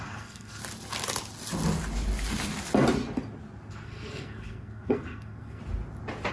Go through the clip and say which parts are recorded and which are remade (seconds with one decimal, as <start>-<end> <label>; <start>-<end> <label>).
0.0-0.6 remade; 0.6-3.7 recorded; 3.7-5.6 remade; 5.6-6.3 recorded